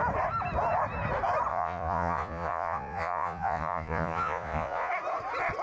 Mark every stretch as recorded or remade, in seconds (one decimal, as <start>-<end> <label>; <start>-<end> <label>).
0.0-1.5 recorded; 1.5-4.9 remade; 4.9-5.6 recorded